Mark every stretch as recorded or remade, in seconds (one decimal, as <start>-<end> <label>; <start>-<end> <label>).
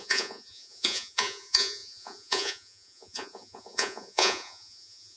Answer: 0.0-5.2 remade